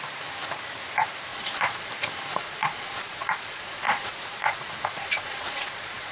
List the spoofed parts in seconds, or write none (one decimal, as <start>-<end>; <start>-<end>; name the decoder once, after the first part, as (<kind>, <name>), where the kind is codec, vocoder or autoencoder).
1.3-1.9 (vocoder, Vocos); 2.3-6.1